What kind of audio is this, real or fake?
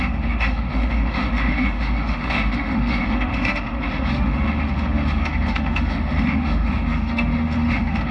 fake